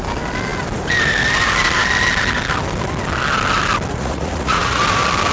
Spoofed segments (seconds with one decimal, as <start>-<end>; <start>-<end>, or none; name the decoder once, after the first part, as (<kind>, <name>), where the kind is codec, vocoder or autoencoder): 3.9-4.8 (vocoder, Vocos)